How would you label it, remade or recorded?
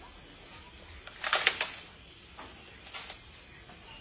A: recorded